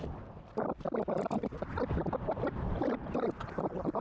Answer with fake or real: real